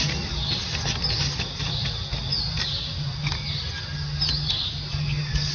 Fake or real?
real